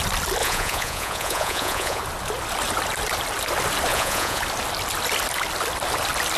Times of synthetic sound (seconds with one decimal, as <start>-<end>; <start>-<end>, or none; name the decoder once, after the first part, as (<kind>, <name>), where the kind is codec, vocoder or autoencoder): 0.4-2.0 (vocoder, Vocos); 3.9-4.4